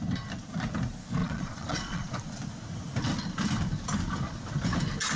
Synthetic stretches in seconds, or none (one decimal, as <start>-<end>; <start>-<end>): 1.2-2.1